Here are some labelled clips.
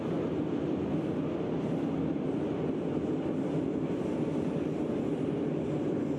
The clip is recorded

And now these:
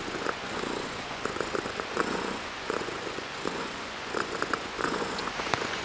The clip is remade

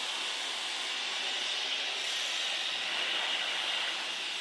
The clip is recorded